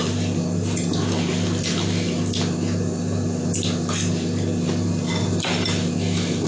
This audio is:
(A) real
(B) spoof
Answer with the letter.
A